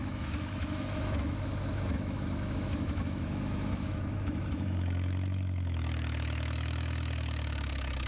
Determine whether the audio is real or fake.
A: fake